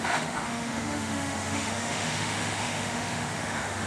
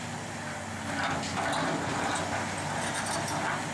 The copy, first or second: first